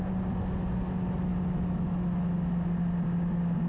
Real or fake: real